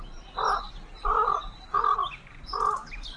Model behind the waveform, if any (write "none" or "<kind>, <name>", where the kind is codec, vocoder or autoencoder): none